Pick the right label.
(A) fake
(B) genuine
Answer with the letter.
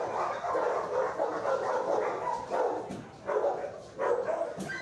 B